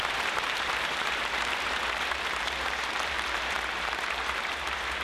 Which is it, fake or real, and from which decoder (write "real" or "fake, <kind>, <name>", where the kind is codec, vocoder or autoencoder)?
fake, vocoder, BigVGAN v2